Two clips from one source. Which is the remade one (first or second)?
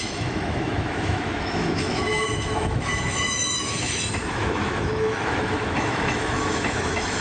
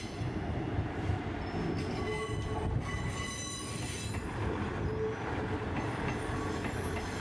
first